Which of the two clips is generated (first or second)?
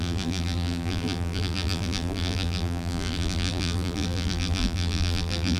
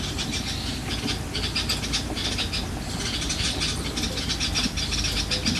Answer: first